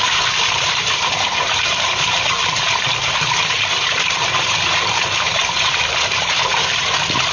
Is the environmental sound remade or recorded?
remade